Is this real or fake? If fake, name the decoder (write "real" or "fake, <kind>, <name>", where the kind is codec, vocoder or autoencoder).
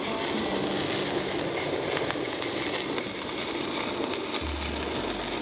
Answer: real